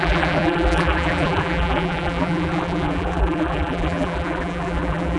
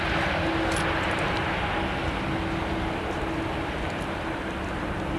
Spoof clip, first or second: first